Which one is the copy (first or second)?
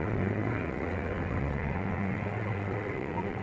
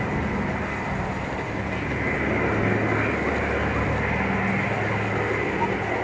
first